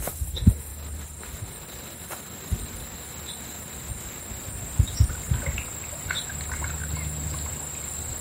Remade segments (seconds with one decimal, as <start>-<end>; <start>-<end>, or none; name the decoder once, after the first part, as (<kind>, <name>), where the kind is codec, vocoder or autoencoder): none